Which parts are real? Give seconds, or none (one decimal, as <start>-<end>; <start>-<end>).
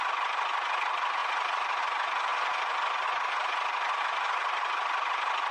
2.3-4.0